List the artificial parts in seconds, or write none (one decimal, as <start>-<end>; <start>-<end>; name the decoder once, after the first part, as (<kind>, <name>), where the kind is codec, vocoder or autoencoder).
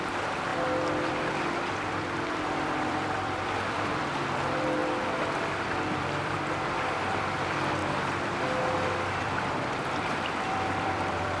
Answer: 0.0-4.8 (vocoder, BigVGAN v2); 5.7-7.8; 9.2-11.4